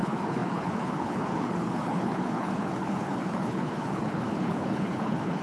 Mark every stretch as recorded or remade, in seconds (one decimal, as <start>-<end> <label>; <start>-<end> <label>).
0.0-5.4 remade